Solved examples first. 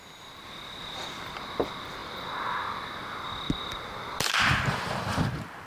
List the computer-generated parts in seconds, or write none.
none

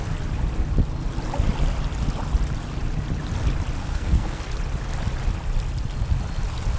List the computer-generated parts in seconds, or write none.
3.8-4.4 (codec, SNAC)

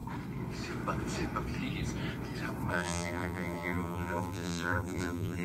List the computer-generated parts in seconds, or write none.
2.7-5.4 (vocoder, BigVGAN v2)